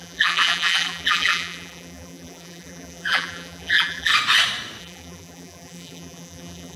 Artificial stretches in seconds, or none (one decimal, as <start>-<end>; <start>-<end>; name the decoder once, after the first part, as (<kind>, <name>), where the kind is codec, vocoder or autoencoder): 0.0-4.1 (vocoder, BigVGAN v2); 4.8-6.8